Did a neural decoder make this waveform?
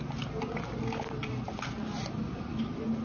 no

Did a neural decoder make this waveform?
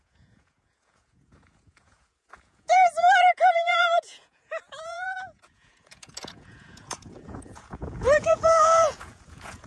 yes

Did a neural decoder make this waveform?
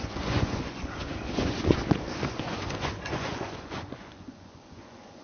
yes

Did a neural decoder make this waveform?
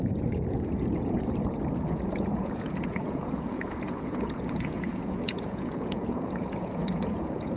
yes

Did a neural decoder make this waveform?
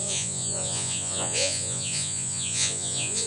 yes